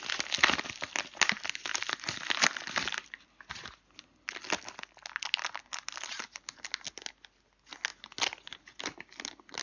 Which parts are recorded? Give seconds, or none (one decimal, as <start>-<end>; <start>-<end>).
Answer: 0.0-7.9; 8.8-9.6